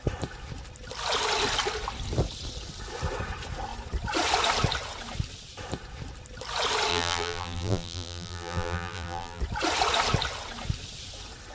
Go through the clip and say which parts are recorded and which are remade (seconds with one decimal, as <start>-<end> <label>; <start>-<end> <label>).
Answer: 0.0-6.9 recorded; 6.9-9.4 remade; 9.4-11.5 recorded